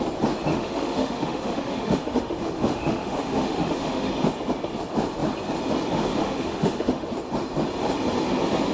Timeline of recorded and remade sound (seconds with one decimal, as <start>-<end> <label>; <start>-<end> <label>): 0.0-0.5 recorded; 0.5-4.1 remade; 4.1-6.2 recorded; 6.2-7.1 remade; 7.1-8.7 recorded